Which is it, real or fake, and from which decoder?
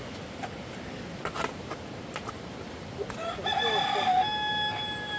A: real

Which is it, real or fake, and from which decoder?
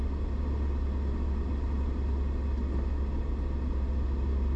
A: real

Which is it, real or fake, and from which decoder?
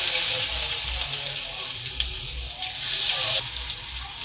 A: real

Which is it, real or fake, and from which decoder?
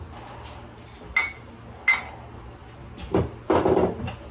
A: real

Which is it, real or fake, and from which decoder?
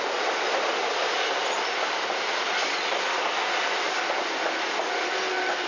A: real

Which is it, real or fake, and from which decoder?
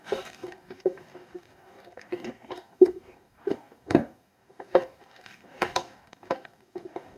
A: fake, codec, DAC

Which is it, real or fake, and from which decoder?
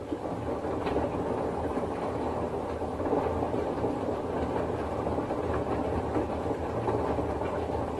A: real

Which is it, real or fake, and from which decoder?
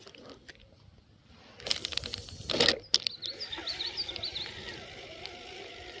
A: real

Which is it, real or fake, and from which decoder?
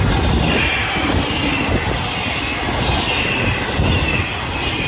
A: real